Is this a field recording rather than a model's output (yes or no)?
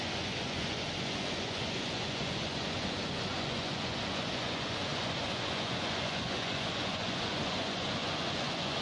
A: no